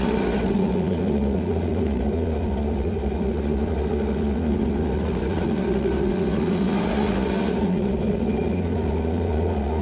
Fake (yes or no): yes